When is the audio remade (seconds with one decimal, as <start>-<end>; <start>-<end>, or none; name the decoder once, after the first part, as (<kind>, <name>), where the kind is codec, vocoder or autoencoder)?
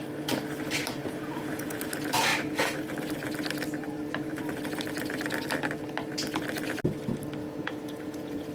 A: 1.0-1.8 (vocoder, Vocos); 7.4-8.5